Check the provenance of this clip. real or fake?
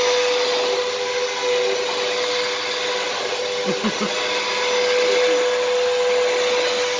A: real